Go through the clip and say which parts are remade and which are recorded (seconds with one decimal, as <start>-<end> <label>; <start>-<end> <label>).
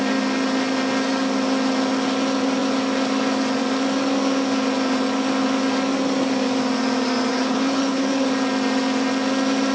0.0-7.3 recorded; 7.3-8.3 remade; 8.3-9.7 recorded